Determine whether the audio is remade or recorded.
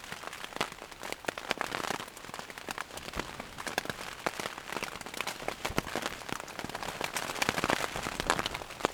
recorded